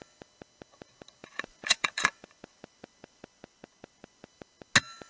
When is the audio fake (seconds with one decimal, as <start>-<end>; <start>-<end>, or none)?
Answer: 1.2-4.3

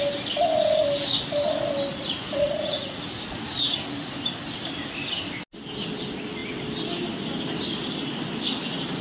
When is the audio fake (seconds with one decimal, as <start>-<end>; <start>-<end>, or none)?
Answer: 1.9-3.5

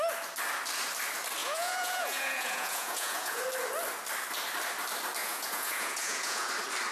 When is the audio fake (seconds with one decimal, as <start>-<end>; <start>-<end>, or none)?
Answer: 1.4-3.4; 5.2-6.5

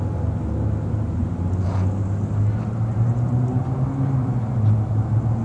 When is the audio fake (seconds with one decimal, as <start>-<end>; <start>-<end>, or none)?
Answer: none

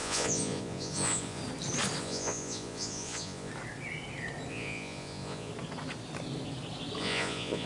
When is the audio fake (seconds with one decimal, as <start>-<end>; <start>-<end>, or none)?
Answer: 0.0-1.4; 2.0-3.5; 4.5-5.5; 7.0-7.7

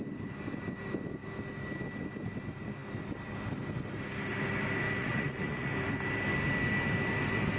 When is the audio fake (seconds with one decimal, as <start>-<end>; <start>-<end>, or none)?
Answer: 5.0-5.7